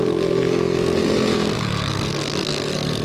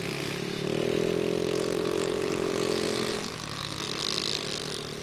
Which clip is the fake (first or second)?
first